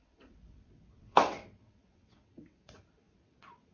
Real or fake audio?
fake